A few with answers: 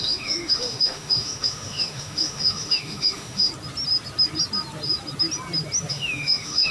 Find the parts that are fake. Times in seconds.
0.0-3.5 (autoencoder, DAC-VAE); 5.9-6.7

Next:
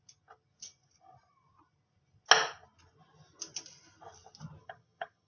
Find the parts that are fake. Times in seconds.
4.6-5.3 (vocoder, HiFi-GAN)

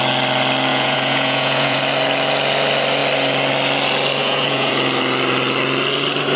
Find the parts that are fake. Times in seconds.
0.7-1.8 (vocoder, Vocos); 4.2-4.7

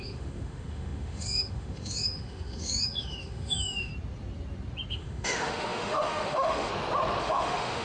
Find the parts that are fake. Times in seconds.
0.0-3.9 (autoencoder, DAC-VAE); 4.9-6.7; 7.2-7.8

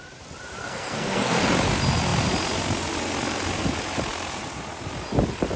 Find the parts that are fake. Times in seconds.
0.6-1.4 (codec, SNAC)

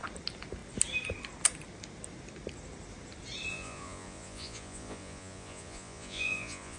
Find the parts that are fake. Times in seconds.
3.5-6.8 (vocoder, Vocos)

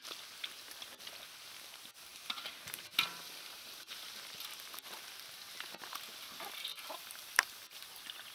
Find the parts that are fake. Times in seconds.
2.1-3.9 (vocoder, BigVGAN v2); 6.7-7.4